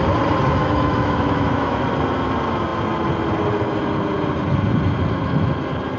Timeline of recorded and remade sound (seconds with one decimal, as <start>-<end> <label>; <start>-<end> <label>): 0.0-0.6 recorded; 0.6-1.8 remade; 1.8-6.0 recorded